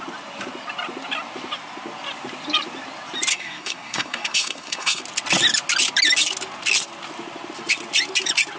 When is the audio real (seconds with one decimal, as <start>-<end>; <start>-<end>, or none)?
0.0-3.3; 5.0-8.6

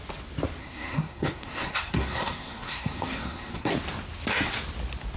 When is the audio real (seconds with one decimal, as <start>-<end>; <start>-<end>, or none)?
0.0-0.6; 3.7-5.2

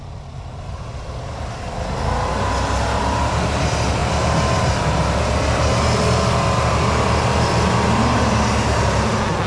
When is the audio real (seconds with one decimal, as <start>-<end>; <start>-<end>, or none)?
0.0-9.5

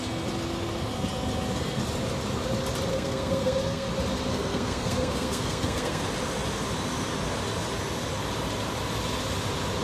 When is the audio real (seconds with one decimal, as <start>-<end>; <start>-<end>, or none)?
0.0-2.9; 3.9-4.3; 6.0-9.8

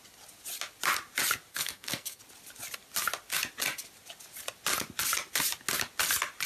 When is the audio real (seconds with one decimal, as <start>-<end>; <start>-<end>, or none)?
0.0-1.5; 2.2-6.5